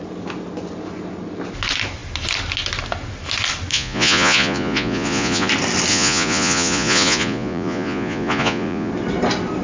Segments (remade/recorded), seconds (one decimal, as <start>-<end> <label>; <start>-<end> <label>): 0.0-3.7 recorded; 3.7-5.5 remade; 5.5-5.9 recorded; 5.9-8.9 remade; 8.9-9.6 recorded